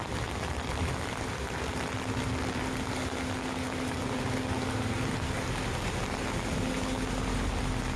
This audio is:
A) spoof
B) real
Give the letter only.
B